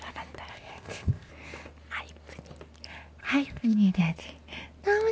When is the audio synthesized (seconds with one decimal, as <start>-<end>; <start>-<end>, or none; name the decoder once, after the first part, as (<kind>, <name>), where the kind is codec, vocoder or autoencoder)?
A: 0.5-1.3 (codec, ZipCodec); 3.2-4.0